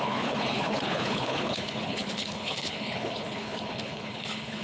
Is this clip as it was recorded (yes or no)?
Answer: no